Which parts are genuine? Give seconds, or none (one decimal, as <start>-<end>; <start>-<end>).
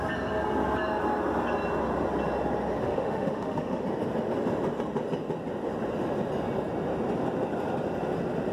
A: 0.0-2.8; 3.8-8.5